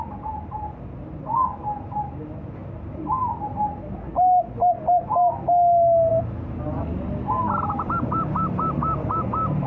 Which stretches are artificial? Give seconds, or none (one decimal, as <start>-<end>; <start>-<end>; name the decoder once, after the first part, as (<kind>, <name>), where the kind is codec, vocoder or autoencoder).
none